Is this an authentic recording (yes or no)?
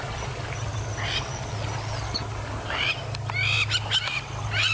yes